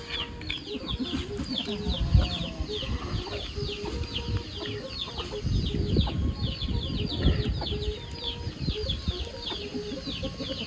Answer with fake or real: real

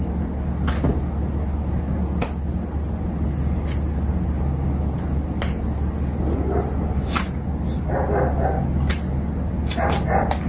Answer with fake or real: real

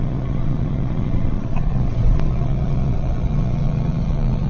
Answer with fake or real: fake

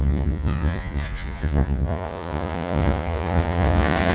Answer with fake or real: fake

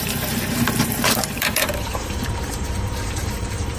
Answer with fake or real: fake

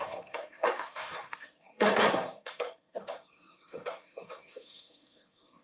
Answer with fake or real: fake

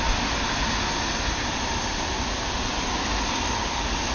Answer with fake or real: real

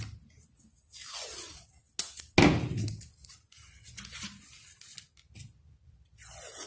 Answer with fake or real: real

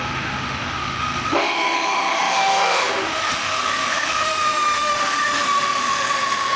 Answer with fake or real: fake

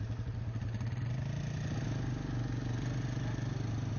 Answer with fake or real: real